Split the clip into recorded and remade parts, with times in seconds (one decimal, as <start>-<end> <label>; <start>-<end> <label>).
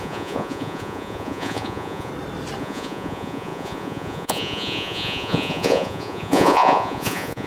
0.0-2.1 remade; 2.1-2.6 recorded; 2.6-7.5 remade